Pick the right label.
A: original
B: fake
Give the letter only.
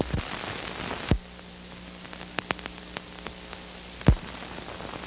A